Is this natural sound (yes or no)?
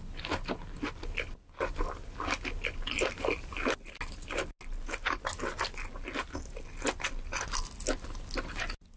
yes